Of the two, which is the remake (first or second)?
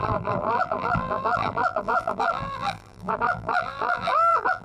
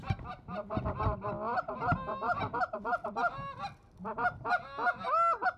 first